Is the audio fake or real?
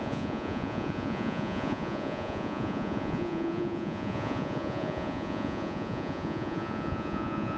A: fake